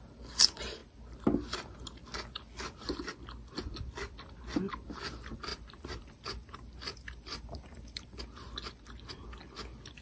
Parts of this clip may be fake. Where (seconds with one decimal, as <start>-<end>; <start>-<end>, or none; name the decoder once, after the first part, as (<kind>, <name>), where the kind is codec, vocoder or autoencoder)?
5.5-8.2 (vocoder, BigVGAN v2)

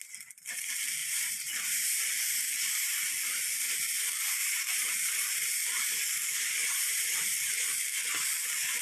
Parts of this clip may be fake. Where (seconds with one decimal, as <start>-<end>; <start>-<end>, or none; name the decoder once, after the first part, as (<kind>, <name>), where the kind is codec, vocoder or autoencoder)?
1.0-2.0 (vocoder, BigVGAN v2); 4.4-5.8; 6.6-7.6

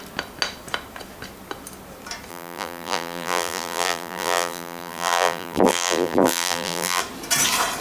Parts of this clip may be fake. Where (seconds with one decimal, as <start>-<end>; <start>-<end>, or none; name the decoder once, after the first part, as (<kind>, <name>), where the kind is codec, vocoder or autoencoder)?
2.3-7.0 (vocoder, BigVGAN v2)

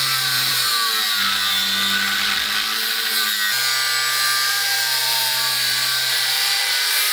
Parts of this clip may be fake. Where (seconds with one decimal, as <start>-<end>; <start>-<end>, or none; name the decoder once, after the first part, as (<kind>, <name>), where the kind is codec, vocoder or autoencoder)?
0.0-0.7 (vocoder, BigVGAN v2); 4.5-7.1

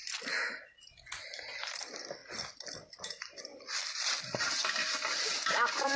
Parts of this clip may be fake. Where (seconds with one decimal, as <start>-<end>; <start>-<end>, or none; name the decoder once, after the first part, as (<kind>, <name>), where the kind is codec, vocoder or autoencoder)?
1.2-2.2 (vocoder, BigVGAN v2); 2.9-6.0

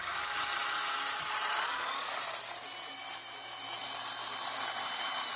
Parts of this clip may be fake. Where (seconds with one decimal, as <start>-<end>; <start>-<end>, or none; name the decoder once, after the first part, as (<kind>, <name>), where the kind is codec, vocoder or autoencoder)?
none

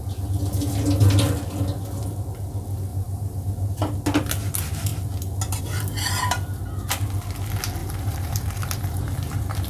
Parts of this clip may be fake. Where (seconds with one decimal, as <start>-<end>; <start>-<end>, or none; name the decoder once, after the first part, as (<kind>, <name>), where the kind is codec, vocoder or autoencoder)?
2.9-3.7 (vocoder, BigVGAN v2); 7.8-9.7